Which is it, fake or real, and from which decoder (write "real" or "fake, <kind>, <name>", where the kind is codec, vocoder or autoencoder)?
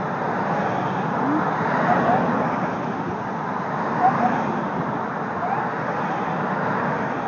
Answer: real